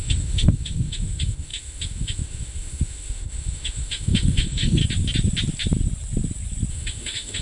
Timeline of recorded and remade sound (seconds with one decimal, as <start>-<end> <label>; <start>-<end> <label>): 0.0-4.8 remade; 4.8-6.7 recorded; 6.7-7.4 remade